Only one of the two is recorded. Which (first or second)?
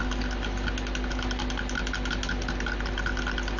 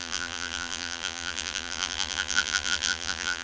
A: first